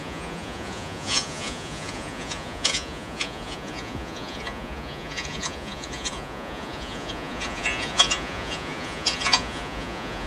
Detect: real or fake fake